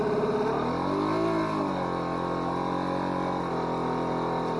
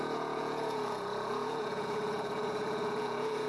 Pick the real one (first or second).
first